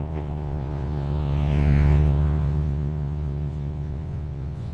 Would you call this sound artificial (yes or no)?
yes